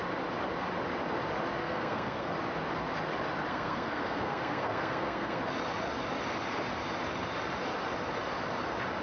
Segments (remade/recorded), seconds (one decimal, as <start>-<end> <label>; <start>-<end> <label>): 0.0-1.6 recorded; 1.6-2.3 remade; 2.3-3.5 recorded; 3.5-5.4 remade; 5.4-9.0 recorded